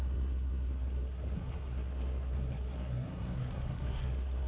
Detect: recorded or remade remade